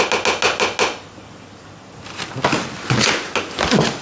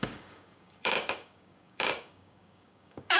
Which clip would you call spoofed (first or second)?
second